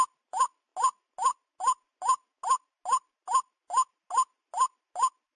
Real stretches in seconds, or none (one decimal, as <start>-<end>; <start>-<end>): 0.0-5.4